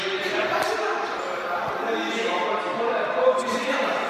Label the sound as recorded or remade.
recorded